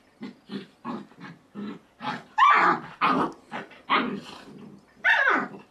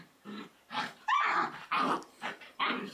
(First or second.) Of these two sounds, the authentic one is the first